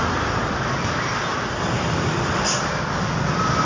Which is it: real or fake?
fake